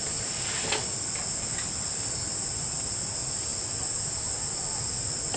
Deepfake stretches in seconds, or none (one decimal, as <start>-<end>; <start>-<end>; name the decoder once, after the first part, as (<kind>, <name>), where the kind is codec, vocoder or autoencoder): none